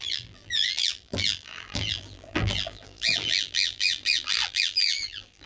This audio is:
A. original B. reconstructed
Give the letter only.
B